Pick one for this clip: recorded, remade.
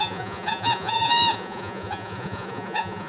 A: remade